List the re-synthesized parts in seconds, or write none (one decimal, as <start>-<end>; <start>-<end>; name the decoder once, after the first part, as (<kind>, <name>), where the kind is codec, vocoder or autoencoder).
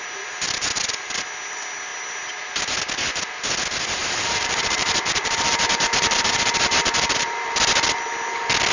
4.0-7.3 (vocoder, BigVGAN v2)